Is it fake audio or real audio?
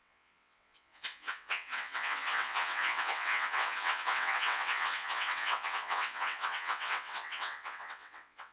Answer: fake